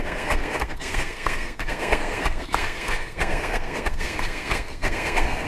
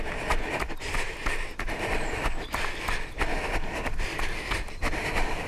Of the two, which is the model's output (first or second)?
first